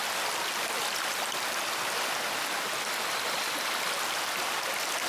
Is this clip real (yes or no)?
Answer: yes